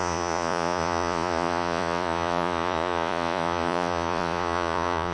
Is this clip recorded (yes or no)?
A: no